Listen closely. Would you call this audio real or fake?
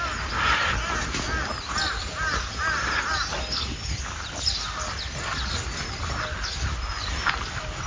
real